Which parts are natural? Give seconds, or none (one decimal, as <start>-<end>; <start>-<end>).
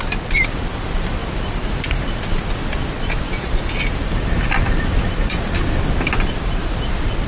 0.0-7.3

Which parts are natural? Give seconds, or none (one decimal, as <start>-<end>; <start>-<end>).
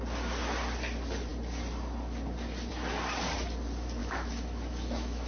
0.0-4.0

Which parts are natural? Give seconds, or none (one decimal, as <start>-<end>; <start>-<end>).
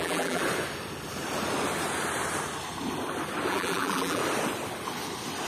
0.4-3.5; 4.2-5.5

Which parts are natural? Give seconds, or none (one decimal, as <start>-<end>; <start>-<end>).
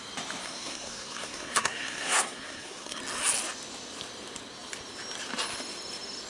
0.0-0.4; 3.0-6.3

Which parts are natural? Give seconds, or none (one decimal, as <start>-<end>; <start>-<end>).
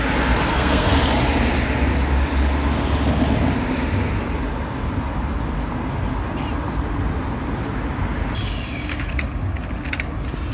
0.0-0.5; 1.0-10.5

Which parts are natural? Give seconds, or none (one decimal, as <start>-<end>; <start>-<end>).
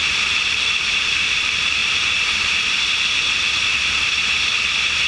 none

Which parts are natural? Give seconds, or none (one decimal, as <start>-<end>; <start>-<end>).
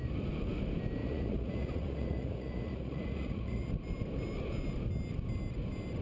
0.0-1.0; 3.7-6.0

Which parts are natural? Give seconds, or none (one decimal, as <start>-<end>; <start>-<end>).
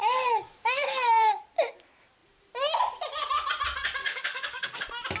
1.4-4.0; 4.8-5.2